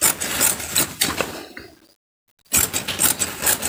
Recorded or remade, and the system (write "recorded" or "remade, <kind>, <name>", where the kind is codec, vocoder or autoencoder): recorded